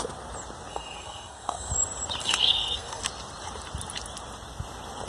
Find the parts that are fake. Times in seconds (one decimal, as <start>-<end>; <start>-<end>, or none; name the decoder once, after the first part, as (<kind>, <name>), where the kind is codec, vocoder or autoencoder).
0.7-1.7 (codec, SNAC); 2.2-3.0